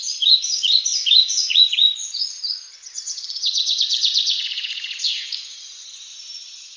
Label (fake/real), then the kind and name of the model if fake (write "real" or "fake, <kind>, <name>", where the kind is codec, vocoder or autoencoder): fake, vocoder, Vocos